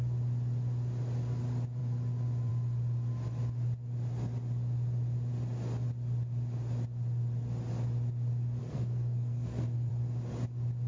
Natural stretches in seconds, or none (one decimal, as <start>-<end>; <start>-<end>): 0.0-8.6; 9.9-10.9